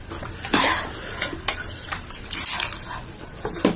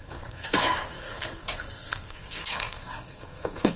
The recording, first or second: first